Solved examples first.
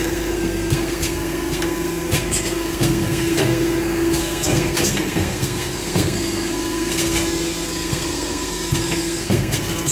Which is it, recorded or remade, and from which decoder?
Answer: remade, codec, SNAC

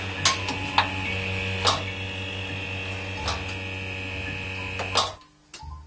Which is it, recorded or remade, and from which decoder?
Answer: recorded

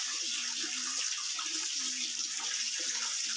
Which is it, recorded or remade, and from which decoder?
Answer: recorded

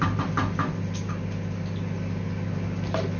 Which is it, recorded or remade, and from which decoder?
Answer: recorded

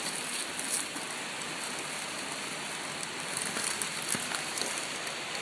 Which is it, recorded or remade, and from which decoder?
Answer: recorded